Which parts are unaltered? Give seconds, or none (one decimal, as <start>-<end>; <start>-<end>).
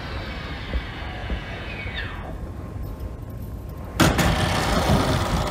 0.0-1.2; 2.3-5.5